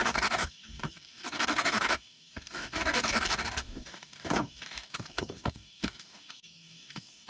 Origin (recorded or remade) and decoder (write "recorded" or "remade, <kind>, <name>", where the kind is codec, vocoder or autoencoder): remade, codec, DAC